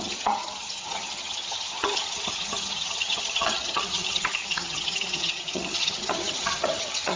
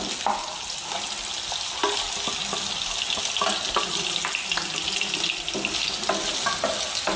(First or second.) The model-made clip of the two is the first